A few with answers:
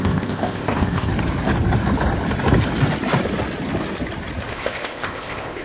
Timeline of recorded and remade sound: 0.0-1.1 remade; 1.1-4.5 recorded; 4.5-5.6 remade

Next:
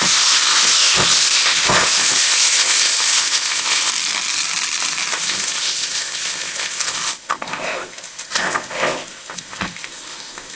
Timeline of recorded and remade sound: 0.0-3.9 remade; 3.9-5.1 recorded; 5.1-10.6 remade

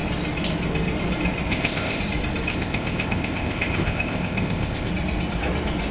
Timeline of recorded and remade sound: 0.0-1.5 recorded; 1.5-2.0 remade; 2.0-2.5 recorded; 2.5-4.9 remade; 4.9-5.9 recorded